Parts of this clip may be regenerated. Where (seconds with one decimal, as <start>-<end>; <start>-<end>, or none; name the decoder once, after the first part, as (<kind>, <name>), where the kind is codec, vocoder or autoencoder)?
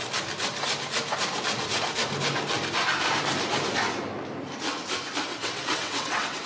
5.3-6.5 (vocoder, WaveNeXt)